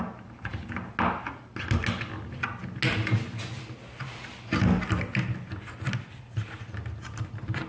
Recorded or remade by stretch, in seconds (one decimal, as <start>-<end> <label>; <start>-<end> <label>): 0.0-7.7 recorded